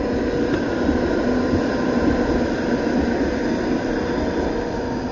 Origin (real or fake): real